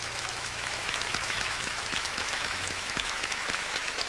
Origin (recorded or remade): remade